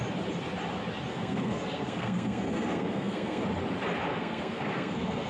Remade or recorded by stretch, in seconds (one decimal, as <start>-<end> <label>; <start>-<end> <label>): 0.0-1.1 recorded; 1.1-3.4 remade; 3.4-4.1 recorded; 4.1-5.3 remade

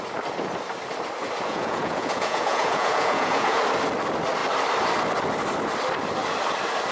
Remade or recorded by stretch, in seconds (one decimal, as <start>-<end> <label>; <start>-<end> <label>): 0.0-1.5 recorded; 1.5-3.6 remade; 3.6-6.9 recorded

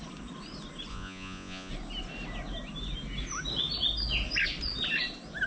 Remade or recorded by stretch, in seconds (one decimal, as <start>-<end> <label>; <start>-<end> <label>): 0.0-0.9 recorded; 0.9-1.7 remade; 1.7-5.5 recorded

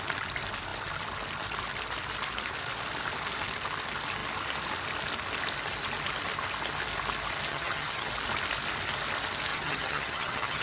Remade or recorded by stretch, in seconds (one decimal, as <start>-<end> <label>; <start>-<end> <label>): 0.0-7.5 recorded; 7.5-8.1 remade; 8.1-9.5 recorded; 9.5-10.6 remade

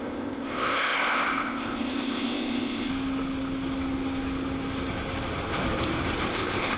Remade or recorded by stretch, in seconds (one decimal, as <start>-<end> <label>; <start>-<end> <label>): 0.0-2.9 remade; 2.9-6.3 recorded; 6.3-6.8 remade

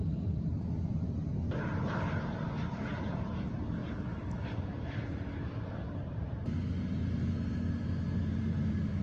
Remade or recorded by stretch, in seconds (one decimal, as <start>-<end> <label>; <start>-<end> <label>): 0.0-9.0 recorded